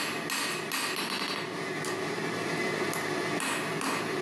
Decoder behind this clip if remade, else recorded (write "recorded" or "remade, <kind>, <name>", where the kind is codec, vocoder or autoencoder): recorded